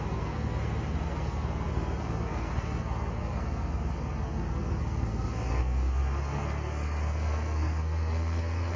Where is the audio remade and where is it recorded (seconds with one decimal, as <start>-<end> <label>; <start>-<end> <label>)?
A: 0.0-8.8 remade

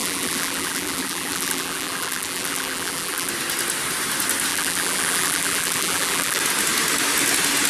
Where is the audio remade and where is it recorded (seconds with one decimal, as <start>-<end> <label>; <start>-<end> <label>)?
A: 0.0-3.3 remade; 3.3-4.5 recorded; 4.5-6.4 remade; 6.4-7.7 recorded